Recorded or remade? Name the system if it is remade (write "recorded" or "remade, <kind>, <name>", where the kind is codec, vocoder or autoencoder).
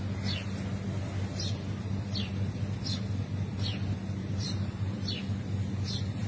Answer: recorded